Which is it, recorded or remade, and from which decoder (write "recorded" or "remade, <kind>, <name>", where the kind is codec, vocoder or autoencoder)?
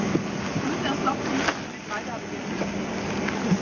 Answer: recorded